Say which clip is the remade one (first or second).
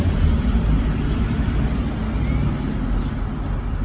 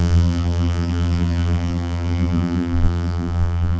second